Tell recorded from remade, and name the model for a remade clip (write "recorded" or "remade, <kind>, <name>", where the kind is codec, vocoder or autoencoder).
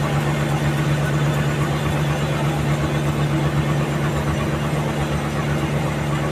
recorded